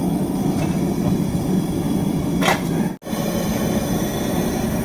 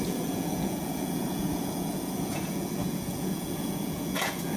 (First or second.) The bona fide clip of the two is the first